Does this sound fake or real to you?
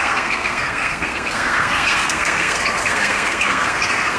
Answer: fake